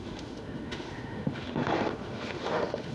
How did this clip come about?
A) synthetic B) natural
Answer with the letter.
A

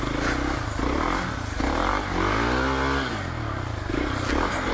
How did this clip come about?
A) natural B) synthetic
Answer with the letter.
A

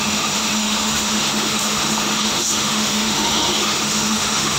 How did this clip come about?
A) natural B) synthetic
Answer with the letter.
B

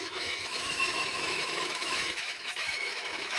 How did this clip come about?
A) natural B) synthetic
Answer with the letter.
B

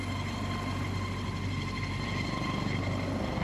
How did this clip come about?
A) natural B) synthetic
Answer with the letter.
A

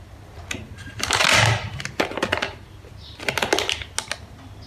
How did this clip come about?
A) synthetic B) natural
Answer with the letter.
B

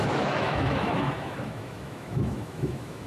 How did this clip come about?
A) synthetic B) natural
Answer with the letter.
A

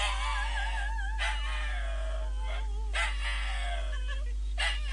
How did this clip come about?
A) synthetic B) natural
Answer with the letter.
B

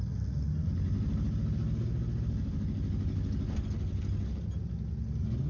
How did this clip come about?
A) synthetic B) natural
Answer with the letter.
B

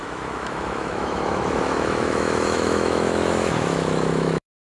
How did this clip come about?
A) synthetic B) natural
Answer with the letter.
A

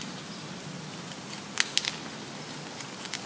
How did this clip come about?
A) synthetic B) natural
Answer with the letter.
B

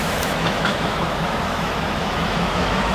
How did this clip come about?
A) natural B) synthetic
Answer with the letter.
B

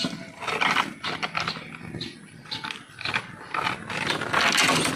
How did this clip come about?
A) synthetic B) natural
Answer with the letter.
B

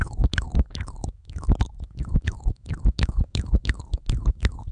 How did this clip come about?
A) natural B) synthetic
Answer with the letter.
B